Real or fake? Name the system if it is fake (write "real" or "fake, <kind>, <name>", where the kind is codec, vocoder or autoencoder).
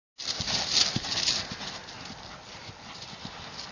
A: real